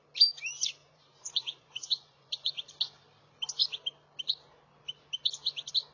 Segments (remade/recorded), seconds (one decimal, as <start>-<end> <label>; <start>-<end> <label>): 0.0-0.8 recorded; 0.8-2.7 remade; 2.7-5.9 recorded